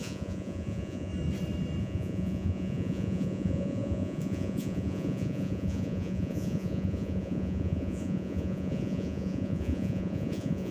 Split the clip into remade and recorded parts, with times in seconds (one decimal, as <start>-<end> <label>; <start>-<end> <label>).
0.0-1.1 remade; 1.1-1.8 recorded; 1.8-10.7 remade